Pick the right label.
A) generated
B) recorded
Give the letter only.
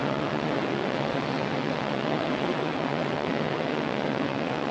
A